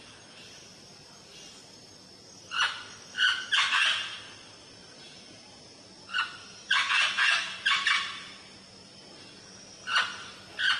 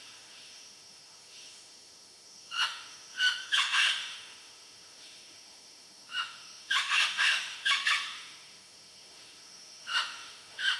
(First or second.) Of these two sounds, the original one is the first